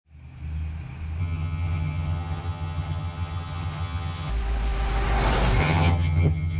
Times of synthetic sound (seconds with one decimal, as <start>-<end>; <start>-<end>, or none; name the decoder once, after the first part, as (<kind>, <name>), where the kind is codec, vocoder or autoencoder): 1.2-4.3 (vocoder, HiFi-GAN); 5.6-6.6